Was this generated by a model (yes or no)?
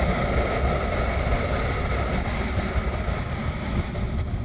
no